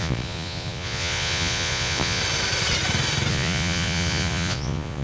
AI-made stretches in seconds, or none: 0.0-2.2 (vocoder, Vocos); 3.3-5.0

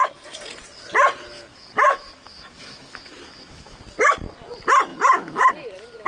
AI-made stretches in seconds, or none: 1.5-3.8 (autoencoder, DAC-VAE); 4.9-5.5

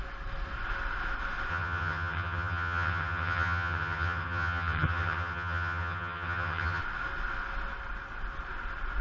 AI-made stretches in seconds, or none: 1.5-6.8 (vocoder, HiFi-GAN)